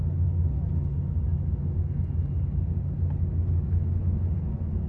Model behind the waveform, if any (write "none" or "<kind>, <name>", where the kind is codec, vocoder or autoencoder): none